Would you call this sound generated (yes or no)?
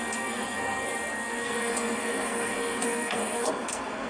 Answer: yes